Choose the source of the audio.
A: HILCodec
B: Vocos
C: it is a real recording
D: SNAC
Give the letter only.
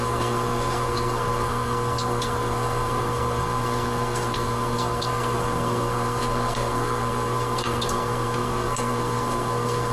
D